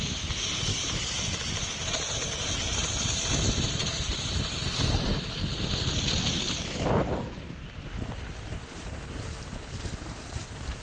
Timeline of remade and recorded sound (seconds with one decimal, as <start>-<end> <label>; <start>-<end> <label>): 0.0-0.7 remade; 0.7-2.2 recorded; 2.2-2.7 remade; 2.7-4.3 recorded; 4.3-5.1 remade; 5.1-10.1 recorded; 10.1-10.8 remade